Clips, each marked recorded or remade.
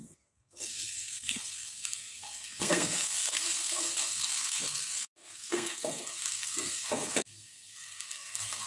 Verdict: remade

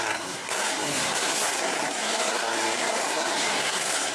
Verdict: remade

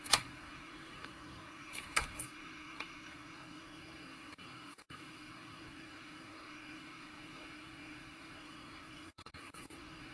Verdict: remade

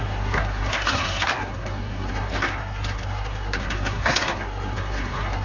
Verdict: remade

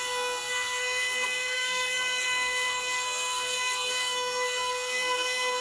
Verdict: remade